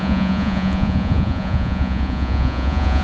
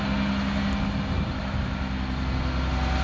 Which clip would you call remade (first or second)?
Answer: first